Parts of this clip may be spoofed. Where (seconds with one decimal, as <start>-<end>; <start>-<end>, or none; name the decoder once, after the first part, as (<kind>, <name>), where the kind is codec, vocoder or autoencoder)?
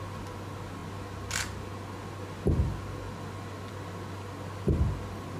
none